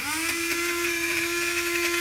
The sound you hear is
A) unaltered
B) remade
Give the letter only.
B